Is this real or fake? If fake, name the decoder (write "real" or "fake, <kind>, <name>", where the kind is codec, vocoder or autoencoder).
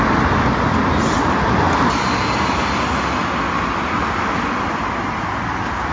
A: real